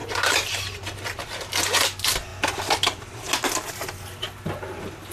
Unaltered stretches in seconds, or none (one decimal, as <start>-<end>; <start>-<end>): 1.5-5.1